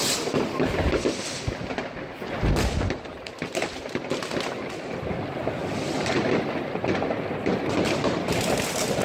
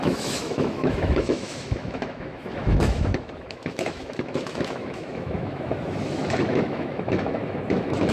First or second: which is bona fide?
first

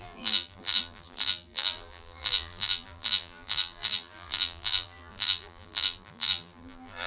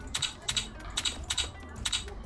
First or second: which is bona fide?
second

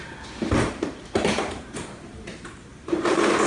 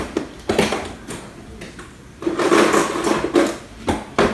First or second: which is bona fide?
second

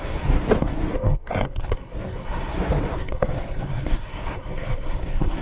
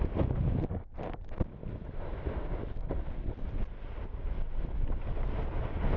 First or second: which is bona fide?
second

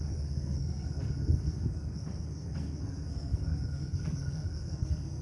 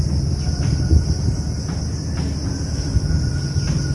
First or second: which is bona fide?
second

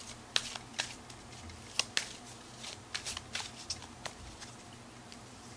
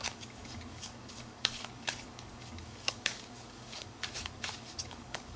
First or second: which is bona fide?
first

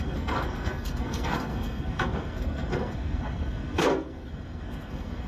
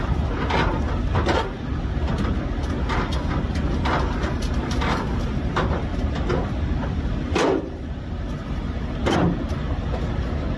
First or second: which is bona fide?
second